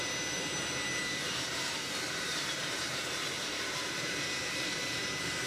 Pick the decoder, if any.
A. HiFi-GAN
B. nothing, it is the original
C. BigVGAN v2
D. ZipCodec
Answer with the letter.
C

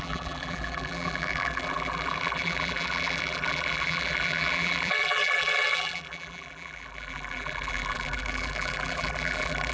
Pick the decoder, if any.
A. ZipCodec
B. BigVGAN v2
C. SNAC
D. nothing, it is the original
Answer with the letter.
B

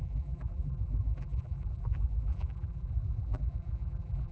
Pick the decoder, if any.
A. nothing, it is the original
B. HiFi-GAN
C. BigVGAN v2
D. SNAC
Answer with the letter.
C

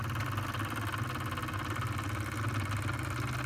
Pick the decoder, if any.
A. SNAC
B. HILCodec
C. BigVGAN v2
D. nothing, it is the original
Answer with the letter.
D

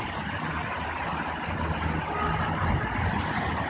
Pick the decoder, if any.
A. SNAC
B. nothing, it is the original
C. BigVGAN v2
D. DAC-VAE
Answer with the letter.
B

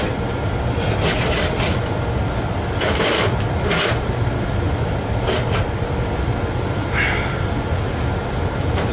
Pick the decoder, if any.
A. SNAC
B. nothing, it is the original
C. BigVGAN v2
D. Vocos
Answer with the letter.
B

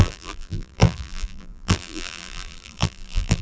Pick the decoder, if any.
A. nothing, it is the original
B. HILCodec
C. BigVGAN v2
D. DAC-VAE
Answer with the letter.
C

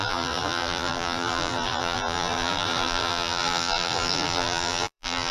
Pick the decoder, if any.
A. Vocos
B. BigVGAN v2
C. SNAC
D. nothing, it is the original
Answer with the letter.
B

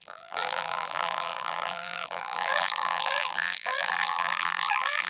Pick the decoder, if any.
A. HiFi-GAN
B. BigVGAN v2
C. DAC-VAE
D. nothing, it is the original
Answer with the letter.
B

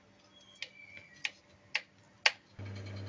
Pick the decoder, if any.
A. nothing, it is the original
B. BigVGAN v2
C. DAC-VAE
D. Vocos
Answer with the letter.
A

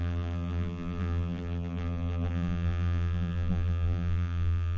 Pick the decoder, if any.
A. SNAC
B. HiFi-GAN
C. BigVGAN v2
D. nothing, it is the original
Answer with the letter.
C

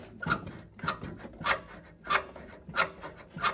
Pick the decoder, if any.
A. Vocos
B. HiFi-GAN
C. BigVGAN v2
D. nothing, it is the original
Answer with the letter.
D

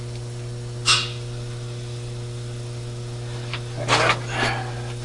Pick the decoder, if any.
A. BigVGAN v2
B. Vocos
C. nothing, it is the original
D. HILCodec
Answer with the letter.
C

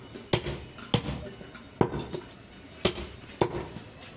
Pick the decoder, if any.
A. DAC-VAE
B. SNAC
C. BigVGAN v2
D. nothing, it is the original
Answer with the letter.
D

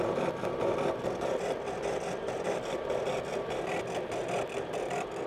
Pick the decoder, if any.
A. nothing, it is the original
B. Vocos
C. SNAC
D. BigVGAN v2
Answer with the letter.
A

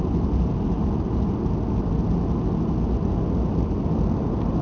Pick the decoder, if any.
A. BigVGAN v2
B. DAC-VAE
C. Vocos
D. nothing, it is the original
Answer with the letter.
D